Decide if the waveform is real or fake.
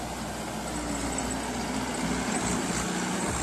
real